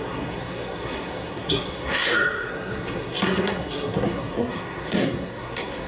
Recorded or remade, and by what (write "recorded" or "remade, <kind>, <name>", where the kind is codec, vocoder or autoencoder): remade, codec, SNAC